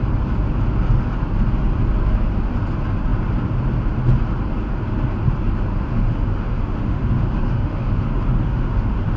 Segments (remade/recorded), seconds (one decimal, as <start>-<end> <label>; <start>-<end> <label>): 0.0-5.9 recorded; 5.9-9.2 remade